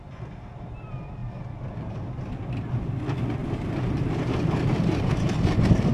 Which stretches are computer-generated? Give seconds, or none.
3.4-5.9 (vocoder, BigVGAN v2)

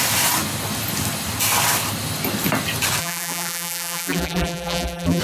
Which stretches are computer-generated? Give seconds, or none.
3.0-5.2 (vocoder, BigVGAN v2)

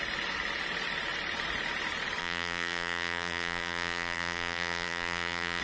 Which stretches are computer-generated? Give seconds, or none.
2.2-5.6 (vocoder, BigVGAN v2)